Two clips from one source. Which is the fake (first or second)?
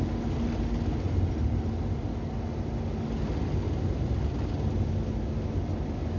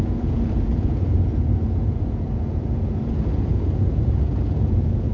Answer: second